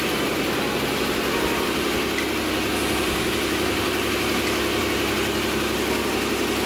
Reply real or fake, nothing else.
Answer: real